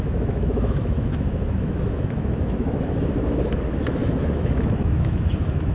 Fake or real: fake